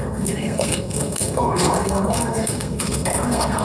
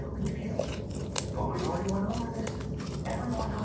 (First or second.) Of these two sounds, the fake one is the first